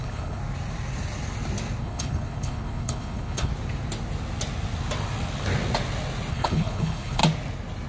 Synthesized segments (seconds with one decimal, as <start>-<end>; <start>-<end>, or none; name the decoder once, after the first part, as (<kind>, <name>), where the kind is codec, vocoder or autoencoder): 0.0-0.4 (codec, HILCodec); 1.8-3.5; 6.3-7.2